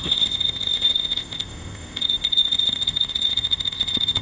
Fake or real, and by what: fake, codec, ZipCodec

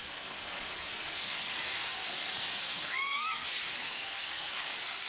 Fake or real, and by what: fake, codec, SNAC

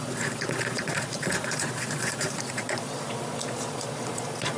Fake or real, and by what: fake, vocoder, Vocos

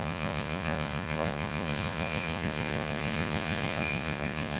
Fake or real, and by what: fake, vocoder, Vocos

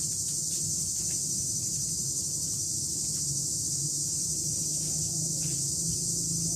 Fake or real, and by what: real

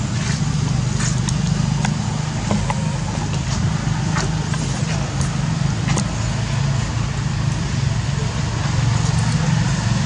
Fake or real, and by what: real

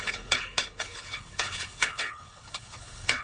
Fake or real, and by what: fake, codec, HILCodec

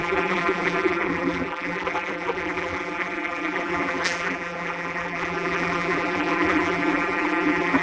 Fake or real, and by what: fake, vocoder, BigVGAN v2